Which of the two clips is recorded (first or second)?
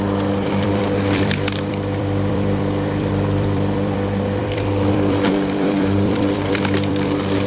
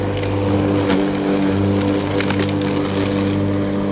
second